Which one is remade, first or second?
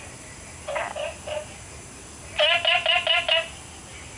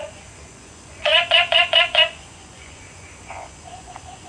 second